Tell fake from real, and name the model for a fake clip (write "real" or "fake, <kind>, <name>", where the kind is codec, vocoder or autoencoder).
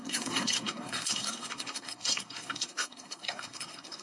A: fake, codec, SNAC